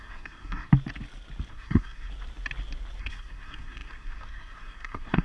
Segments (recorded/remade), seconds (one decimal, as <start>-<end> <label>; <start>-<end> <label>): 0.0-0.7 remade; 0.7-1.5 recorded; 1.5-2.1 remade; 2.1-3.0 recorded; 3.0-5.2 remade

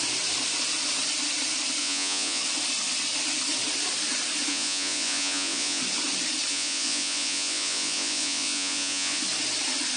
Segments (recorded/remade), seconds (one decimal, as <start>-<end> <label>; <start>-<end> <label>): 0.0-1.8 recorded; 1.8-2.4 remade; 2.4-4.5 recorded; 4.5-5.8 remade; 5.8-6.5 recorded; 6.5-9.2 remade; 9.2-10.0 recorded

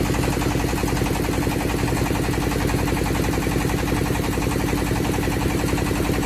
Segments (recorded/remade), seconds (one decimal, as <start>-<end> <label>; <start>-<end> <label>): 0.0-6.3 recorded

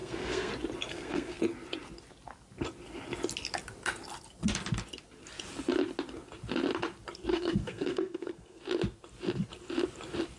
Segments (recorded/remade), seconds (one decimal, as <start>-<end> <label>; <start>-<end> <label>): 0.0-0.5 remade; 0.5-0.9 recorded; 0.9-1.4 remade; 1.4-7.3 recorded; 7.3-8.6 remade; 8.6-10.4 recorded